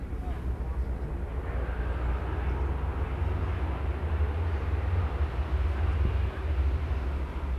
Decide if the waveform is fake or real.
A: real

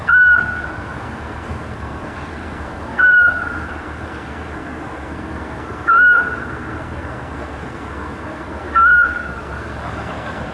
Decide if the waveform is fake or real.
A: fake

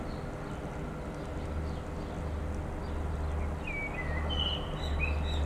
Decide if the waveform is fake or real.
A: real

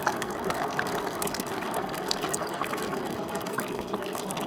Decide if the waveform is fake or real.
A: fake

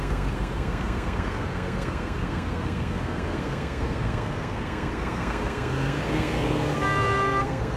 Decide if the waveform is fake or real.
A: fake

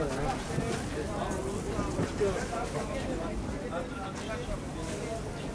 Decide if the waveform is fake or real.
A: real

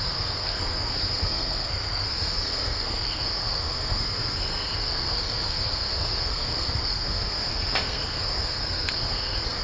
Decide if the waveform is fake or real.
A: fake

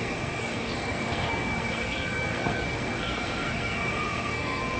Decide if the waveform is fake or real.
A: fake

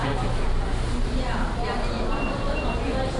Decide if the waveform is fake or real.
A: real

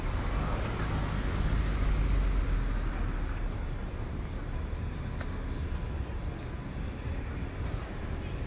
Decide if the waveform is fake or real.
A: real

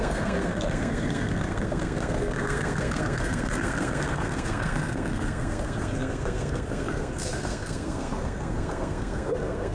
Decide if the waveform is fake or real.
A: fake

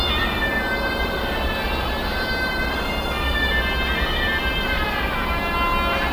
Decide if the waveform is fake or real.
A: real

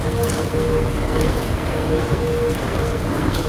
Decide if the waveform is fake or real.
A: fake